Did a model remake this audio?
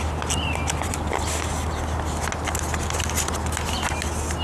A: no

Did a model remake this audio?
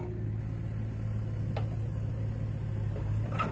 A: no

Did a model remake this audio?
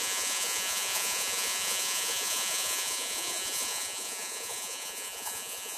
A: yes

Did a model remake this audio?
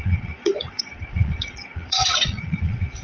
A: yes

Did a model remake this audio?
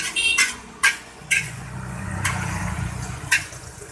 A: yes